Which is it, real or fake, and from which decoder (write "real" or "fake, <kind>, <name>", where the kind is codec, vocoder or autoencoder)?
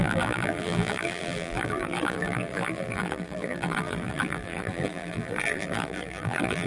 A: fake, vocoder, BigVGAN v2